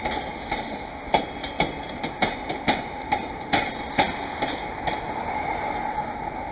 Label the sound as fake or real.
real